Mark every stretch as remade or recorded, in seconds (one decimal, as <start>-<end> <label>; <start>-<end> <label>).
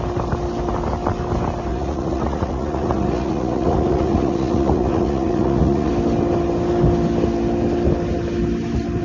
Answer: 0.0-1.7 recorded; 1.7-5.9 remade; 5.9-9.0 recorded